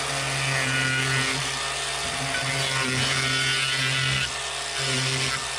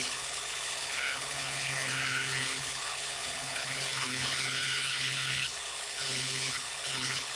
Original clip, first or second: first